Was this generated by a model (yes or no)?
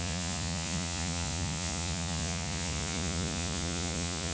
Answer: yes